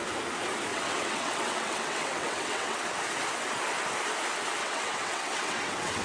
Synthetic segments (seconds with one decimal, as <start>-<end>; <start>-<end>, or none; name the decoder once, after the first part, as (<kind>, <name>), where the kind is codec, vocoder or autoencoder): 0.7-2.8 (vocoder, WaveNeXt); 4.6-6.0